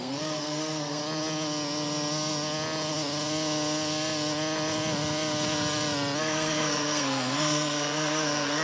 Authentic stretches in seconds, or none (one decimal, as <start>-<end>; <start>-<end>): 1.0-6.2